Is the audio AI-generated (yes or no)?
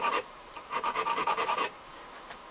yes